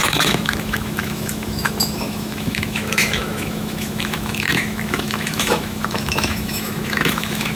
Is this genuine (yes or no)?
no